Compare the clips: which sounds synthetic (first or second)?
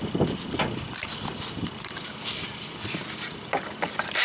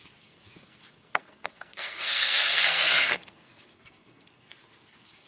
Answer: second